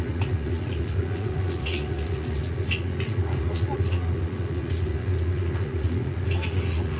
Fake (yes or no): yes